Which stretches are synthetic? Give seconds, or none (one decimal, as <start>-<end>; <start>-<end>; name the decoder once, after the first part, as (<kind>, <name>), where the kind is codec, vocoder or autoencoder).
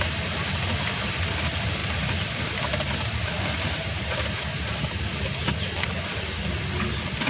none